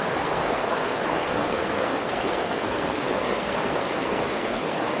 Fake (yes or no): yes